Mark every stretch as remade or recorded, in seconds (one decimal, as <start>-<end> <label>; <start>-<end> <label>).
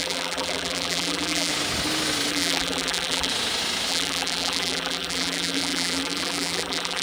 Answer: 0.0-1.5 remade; 1.5-2.3 recorded; 2.3-3.3 remade; 3.3-3.9 recorded; 3.9-7.0 remade